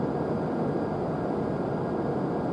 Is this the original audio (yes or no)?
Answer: yes